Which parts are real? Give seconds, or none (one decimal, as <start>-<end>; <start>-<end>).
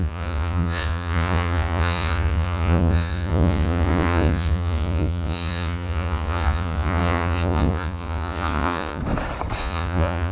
9.0-9.6